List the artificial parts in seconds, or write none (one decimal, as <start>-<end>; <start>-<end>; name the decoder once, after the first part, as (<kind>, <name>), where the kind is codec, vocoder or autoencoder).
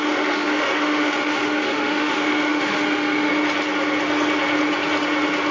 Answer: 0.0-3.3 (autoencoder, DAC-VAE)